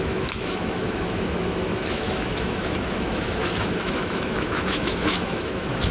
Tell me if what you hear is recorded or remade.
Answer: remade